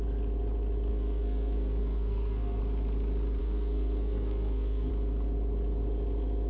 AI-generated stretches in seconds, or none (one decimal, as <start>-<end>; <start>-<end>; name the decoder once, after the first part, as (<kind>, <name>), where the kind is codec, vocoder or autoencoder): 0.9-2.6 (codec, SNAC); 3.4-4.9